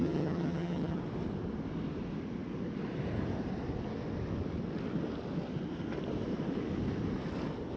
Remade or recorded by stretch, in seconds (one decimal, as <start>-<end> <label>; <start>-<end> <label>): 0.0-1.0 remade; 1.0-7.8 recorded